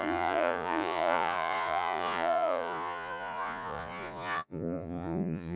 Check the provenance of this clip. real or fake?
fake